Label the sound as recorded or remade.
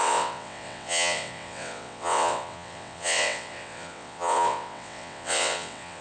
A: remade